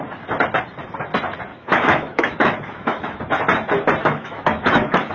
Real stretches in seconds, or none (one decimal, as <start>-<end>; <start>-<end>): 0.0-1.5; 3.2-4.0